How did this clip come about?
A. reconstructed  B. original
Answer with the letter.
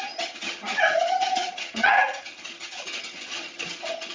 A